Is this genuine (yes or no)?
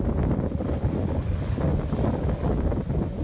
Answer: yes